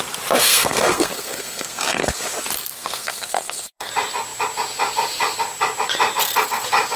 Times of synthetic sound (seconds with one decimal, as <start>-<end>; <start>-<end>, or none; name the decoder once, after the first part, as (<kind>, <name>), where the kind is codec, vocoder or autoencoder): 0.4-2.2 (codec, SNAC); 2.7-3.9